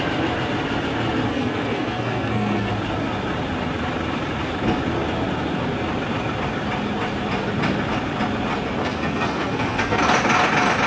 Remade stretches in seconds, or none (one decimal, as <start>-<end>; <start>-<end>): 1.3-2.7; 8.8-10.0